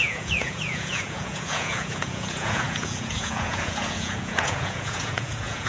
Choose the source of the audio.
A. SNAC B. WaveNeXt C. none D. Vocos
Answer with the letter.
D